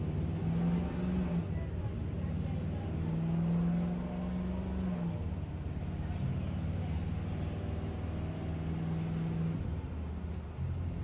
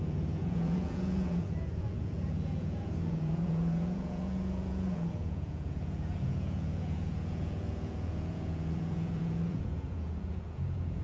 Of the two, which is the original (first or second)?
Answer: first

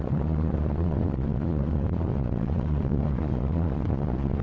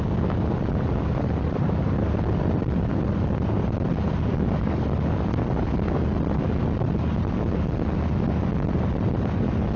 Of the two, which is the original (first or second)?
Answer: second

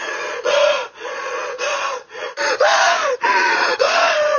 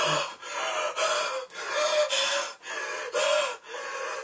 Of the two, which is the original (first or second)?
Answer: second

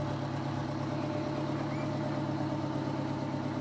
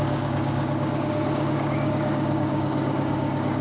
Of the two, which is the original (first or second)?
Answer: first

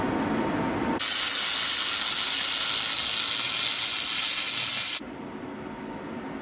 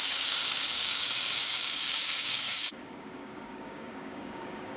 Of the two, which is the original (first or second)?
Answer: first